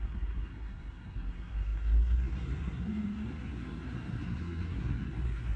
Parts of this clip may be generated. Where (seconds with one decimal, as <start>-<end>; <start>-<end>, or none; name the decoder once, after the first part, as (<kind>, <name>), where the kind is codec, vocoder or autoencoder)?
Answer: 0.0-5.6 (codec, SNAC)